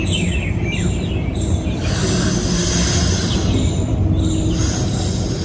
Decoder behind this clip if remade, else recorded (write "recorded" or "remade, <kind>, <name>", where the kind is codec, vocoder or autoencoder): recorded